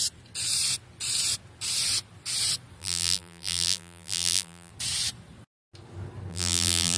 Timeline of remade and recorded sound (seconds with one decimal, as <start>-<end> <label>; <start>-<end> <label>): 0.0-2.8 recorded; 2.8-4.7 remade; 4.7-6.3 recorded; 6.3-7.0 remade